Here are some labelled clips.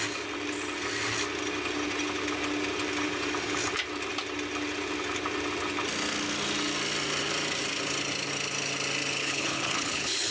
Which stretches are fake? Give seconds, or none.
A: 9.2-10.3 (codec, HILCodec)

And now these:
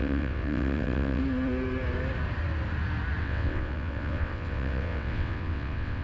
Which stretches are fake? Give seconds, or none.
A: 0.0-1.2 (vocoder, WaveNeXt); 3.2-6.0

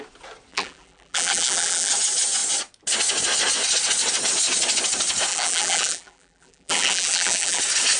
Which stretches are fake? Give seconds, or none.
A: 0.5-1.9 (vocoder, BigVGAN v2); 5.3-7.6

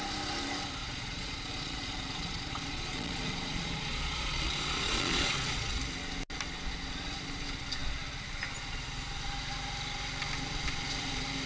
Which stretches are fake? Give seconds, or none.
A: 0.8-5.8 (vocoder, Vocos)

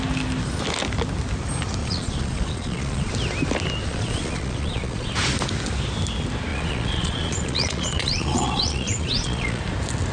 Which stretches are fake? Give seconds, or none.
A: 1.8-3.1 (vocoder, Vocos); 3.8-5.1; 6.5-9.6

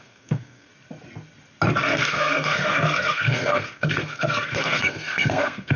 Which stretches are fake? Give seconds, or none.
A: 0.0-0.7 (codec, SNAC); 1.8-5.8

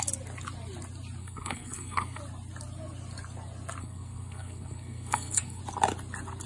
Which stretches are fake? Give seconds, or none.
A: 1.2-2.2 (codec, SNAC); 3.8-5.6